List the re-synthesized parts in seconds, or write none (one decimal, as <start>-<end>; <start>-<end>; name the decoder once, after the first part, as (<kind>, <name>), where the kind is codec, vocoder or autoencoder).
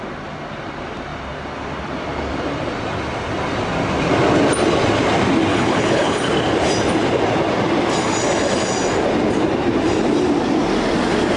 5.5-6.3 (codec, HILCodec)